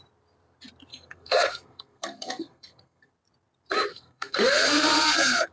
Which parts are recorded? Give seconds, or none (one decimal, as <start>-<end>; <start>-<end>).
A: 0.0-0.9; 3.1-3.9

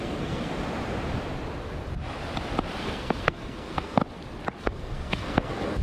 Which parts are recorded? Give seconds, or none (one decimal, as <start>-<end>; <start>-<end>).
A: 0.5-2.8; 4.0-4.6

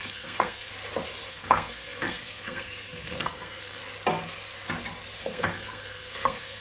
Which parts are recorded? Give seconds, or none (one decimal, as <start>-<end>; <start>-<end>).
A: 0.7-1.3; 3.8-5.2

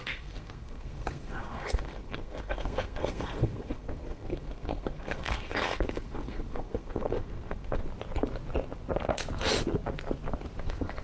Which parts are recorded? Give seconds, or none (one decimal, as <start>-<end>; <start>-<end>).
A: 7.8-10.6

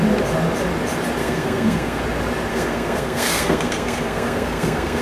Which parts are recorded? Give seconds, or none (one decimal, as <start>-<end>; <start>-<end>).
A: 0.0-1.2; 2.0-2.5